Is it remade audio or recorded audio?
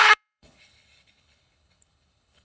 remade